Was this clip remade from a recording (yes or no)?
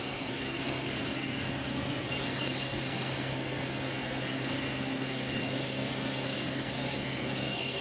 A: yes